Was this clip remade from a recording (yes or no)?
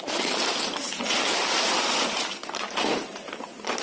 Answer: yes